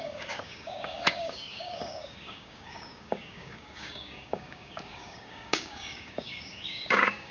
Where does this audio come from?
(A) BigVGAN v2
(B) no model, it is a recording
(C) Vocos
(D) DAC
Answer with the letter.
D